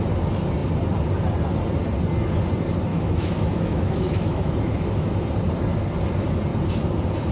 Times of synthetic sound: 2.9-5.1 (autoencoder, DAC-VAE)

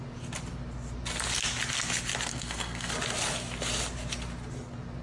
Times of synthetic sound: 2.3-2.9 (codec, SNAC)

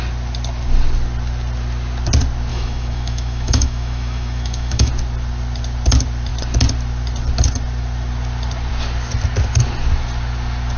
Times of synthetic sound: 2.5-4.9 (autoencoder, DAC-VAE)

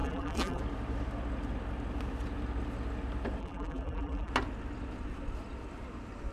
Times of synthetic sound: 0.0-0.6 (vocoder, BigVGAN v2); 3.4-4.3

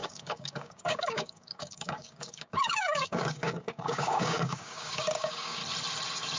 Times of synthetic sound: 0.0-5.6 (codec, DAC)